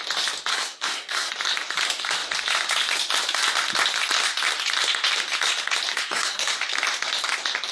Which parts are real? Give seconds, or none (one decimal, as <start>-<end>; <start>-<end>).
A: 0.0-0.5; 1.3-5.9; 6.5-7.7